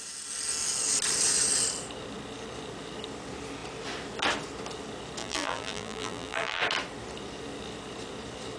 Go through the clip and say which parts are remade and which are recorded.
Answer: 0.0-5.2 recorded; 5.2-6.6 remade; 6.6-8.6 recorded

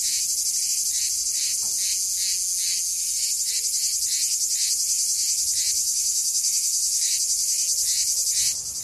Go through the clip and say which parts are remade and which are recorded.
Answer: 0.0-2.9 recorded; 2.9-3.5 remade; 3.5-5.8 recorded; 5.8-7.1 remade; 7.1-8.8 recorded

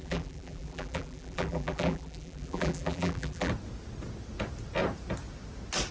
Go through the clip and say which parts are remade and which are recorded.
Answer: 0.0-3.5 remade; 3.5-5.9 recorded

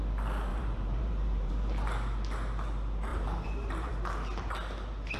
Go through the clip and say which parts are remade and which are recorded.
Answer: 0.0-0.5 recorded; 0.5-1.5 remade; 1.5-3.1 recorded; 3.1-3.9 remade; 3.9-5.2 recorded